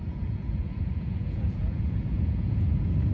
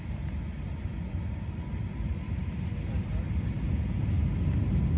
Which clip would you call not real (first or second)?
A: first